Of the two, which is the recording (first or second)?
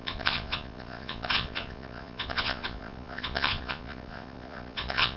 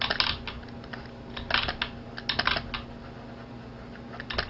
second